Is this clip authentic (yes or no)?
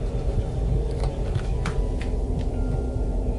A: yes